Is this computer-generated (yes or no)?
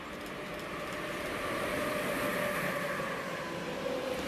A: no